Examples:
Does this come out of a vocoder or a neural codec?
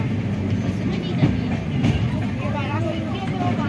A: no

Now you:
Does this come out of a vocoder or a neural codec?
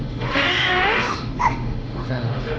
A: yes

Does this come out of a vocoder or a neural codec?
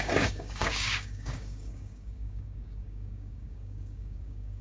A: yes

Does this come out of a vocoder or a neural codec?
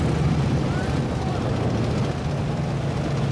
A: no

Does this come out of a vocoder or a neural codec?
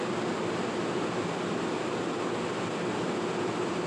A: no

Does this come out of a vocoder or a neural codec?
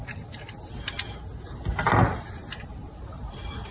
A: no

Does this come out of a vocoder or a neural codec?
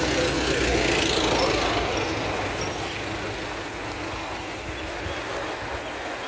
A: no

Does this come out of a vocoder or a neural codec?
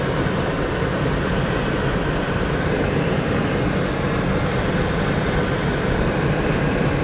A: no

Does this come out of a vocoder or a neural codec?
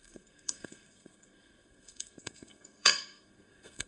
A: yes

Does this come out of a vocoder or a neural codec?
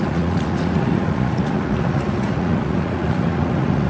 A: yes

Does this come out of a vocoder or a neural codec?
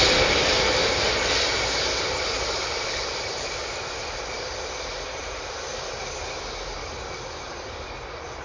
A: no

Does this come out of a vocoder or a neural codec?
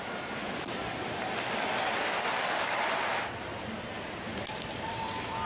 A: no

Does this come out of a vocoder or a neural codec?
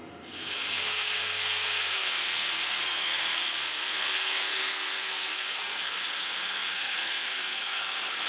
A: yes